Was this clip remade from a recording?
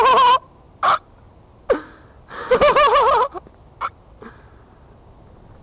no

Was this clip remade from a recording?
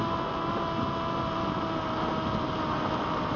no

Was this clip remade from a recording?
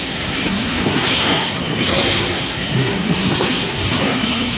yes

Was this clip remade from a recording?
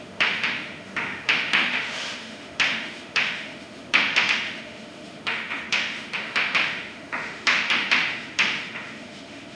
yes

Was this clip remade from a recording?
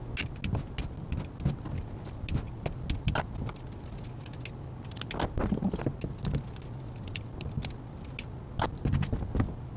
no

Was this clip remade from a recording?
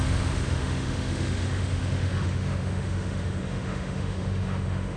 yes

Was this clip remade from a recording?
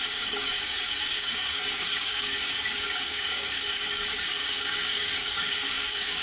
yes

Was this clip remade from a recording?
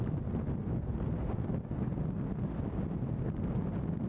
no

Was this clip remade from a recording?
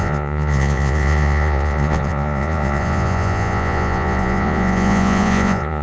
yes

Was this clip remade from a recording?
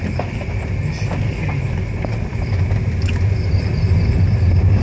no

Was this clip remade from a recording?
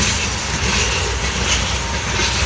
no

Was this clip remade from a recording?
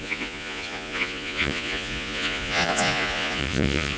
yes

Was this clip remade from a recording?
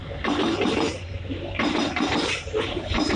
yes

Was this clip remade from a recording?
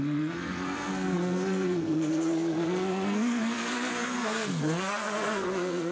yes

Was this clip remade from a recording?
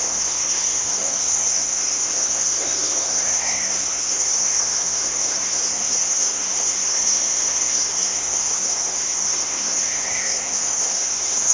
yes